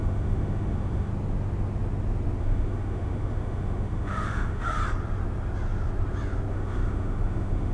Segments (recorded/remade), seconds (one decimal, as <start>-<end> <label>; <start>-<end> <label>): 0.0-1.1 remade; 1.1-2.4 recorded; 2.4-4.8 remade; 4.8-6.5 recorded; 6.5-7.7 remade